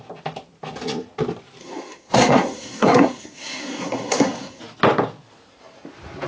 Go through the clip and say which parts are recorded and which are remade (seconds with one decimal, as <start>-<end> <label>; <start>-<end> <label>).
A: 0.0-1.6 recorded; 1.6-4.6 remade; 4.6-6.3 recorded